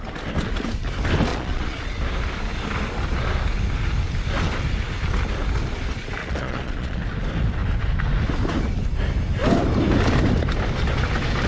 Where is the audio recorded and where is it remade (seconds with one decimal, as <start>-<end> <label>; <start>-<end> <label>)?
0.0-1.3 recorded; 1.3-2.0 remade; 2.0-6.2 recorded; 6.2-7.0 remade; 7.0-11.5 recorded